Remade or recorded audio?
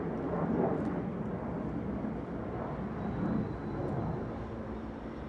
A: recorded